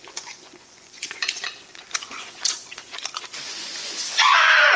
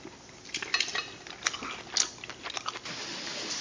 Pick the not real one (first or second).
first